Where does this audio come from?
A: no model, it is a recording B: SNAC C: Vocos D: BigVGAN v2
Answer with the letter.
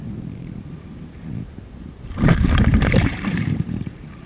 D